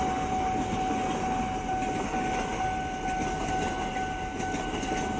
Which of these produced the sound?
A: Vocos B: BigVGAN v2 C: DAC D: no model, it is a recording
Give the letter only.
D